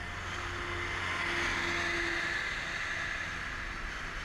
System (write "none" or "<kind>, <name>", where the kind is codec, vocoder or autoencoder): none